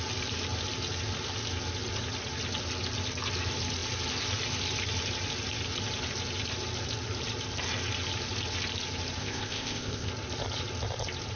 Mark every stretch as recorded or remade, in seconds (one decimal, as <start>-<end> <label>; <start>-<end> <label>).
0.0-9.2 recorded; 9.2-10.1 remade; 10.1-11.4 recorded